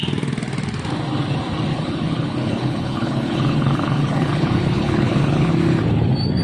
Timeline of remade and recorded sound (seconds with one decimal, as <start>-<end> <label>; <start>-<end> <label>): 0.0-1.7 recorded; 1.7-5.5 remade; 5.5-6.4 recorded